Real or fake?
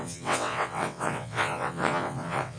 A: fake